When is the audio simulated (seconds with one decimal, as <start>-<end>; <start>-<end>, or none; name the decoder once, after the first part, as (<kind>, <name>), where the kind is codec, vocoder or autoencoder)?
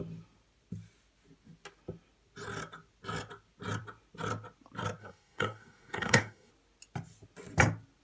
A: 5.0-6.5 (codec, SNAC)